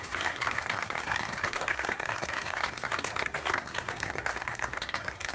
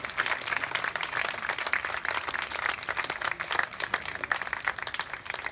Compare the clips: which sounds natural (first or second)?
second